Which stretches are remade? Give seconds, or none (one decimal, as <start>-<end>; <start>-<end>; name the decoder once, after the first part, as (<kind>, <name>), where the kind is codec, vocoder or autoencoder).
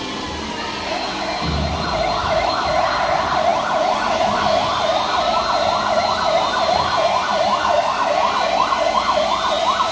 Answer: 2.2-2.7 (autoencoder, DAC-VAE)